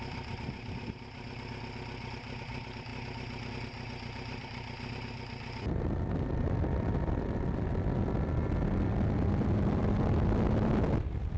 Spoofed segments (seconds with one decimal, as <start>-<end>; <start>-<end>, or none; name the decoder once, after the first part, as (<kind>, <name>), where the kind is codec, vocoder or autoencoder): none